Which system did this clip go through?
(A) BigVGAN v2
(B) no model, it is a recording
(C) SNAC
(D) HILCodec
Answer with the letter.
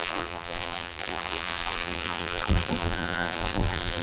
A